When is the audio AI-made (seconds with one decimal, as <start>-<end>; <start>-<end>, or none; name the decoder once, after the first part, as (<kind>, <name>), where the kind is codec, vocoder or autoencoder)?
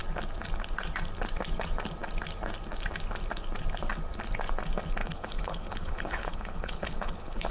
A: 5.0-7.5 (codec, HILCodec)